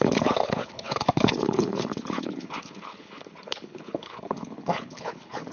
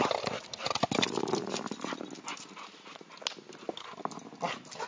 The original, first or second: second